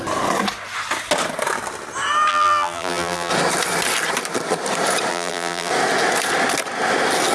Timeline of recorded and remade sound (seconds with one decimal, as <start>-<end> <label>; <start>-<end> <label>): 0.0-2.3 recorded; 2.3-3.3 remade; 3.3-5.1 recorded; 5.1-5.7 remade; 5.7-7.3 recorded